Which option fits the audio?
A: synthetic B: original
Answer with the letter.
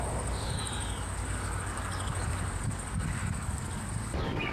A